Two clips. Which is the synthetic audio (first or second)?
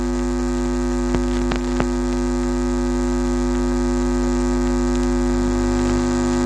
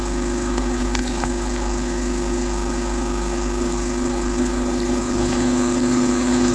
second